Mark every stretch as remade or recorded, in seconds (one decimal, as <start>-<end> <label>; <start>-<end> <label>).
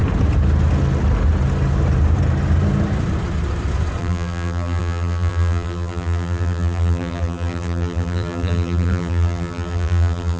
0.0-4.0 recorded; 4.0-10.4 remade